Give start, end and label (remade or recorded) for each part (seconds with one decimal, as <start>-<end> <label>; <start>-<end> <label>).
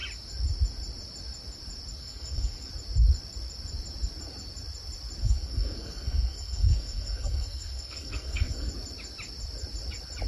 0.0-2.0 recorded; 2.0-2.7 remade; 2.7-5.2 recorded; 5.2-8.7 remade; 8.7-10.3 recorded